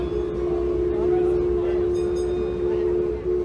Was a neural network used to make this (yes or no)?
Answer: no